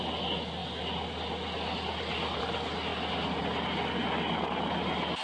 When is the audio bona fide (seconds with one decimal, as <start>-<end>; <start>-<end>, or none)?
0.0-5.2

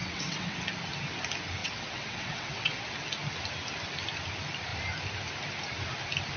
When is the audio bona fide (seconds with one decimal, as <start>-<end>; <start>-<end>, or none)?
0.6-1.6; 2.8-6.4